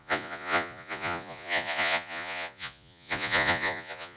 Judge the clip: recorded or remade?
remade